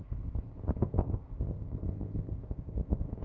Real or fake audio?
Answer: fake